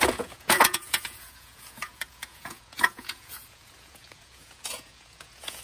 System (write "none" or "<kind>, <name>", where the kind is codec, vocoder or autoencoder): vocoder, Vocos